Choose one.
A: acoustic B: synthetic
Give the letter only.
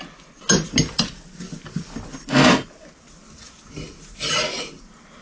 A